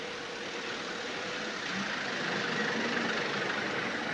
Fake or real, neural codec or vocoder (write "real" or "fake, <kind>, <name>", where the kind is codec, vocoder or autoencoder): real